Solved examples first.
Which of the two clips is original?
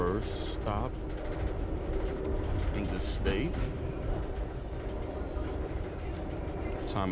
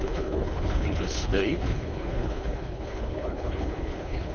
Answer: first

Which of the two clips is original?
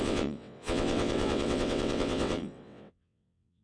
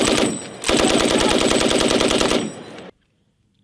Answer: second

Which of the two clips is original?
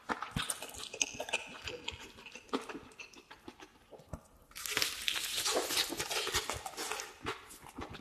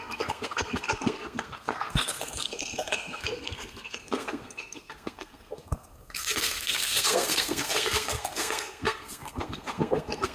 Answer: first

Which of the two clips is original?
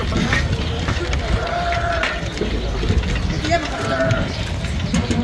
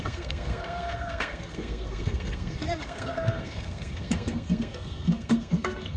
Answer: first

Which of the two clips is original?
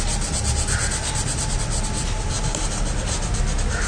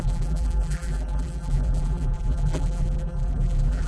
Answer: first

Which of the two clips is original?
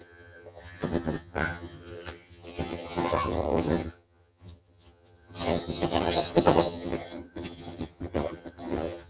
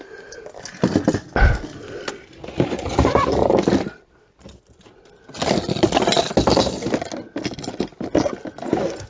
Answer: second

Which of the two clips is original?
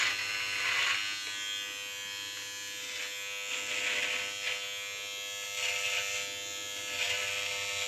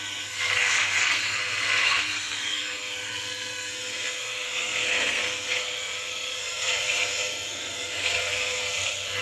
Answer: first